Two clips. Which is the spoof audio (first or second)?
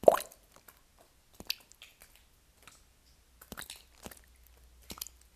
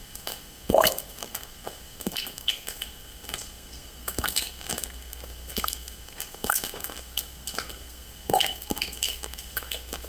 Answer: second